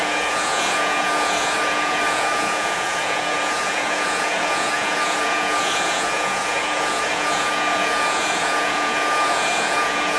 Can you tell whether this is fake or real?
fake